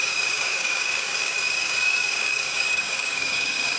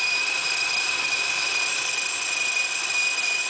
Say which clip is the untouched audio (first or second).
second